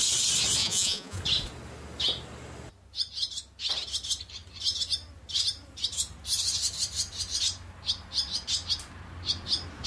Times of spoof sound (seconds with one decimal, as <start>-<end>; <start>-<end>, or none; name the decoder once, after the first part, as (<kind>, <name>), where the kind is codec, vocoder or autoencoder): 0.6-1.2 (vocoder, Vocos)